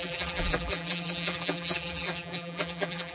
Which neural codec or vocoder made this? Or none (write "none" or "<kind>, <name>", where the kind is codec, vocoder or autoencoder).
vocoder, BigVGAN v2